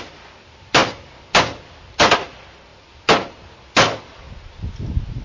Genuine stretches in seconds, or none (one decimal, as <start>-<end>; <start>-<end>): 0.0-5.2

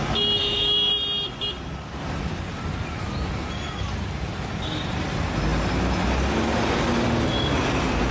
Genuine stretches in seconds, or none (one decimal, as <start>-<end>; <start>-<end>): 0.0-0.4; 0.9-8.1

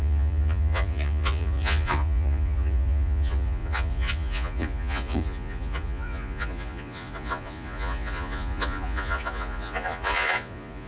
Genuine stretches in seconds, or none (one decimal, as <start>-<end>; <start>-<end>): none

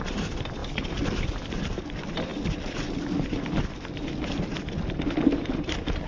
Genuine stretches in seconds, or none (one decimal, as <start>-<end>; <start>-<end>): 0.0-6.1

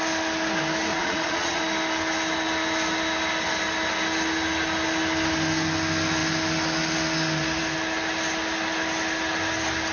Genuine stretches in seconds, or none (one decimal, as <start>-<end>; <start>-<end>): 0.0-0.9; 1.6-9.9

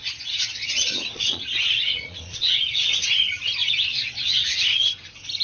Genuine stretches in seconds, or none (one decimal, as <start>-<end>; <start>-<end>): 2.9-3.6; 4.9-5.4

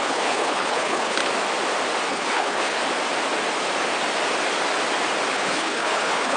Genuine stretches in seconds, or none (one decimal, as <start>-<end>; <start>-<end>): 1.2-2.1; 2.8-5.3

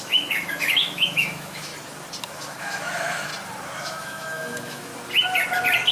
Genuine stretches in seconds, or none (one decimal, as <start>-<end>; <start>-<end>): 1.7-2.2; 3.3-3.8; 4.9-5.9